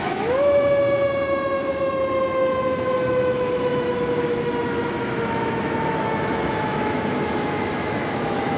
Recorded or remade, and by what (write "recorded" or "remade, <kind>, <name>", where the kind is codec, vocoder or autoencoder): remade, autoencoder, DAC-VAE